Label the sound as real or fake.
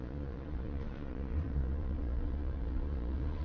fake